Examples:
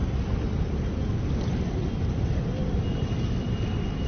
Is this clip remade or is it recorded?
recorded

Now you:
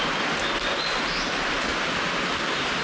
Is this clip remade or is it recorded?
recorded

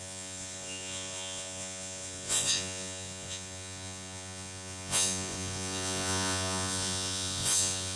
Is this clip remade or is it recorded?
remade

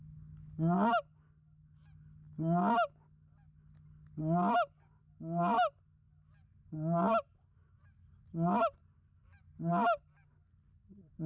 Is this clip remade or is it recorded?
recorded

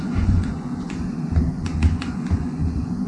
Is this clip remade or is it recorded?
remade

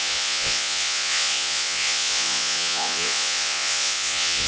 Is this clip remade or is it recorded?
remade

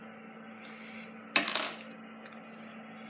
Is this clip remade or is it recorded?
recorded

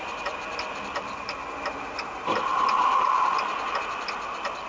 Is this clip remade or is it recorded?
recorded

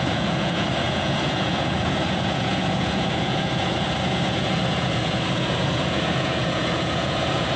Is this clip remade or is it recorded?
remade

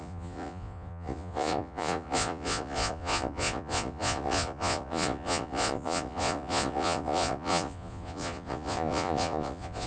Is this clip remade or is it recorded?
remade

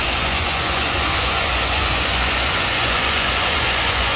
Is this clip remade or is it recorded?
remade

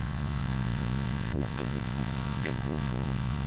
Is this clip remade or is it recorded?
remade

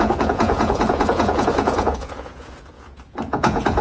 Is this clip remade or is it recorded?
remade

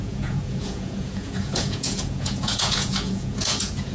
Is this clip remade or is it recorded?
remade